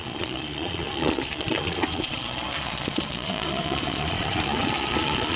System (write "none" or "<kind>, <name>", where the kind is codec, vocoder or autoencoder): vocoder, Vocos